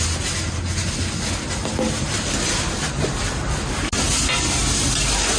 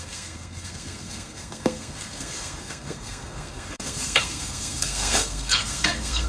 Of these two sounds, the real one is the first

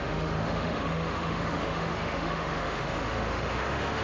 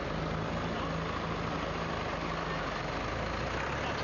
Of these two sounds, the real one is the second